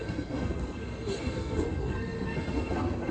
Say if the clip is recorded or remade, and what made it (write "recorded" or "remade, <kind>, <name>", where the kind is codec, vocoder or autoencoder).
remade, codec, SNAC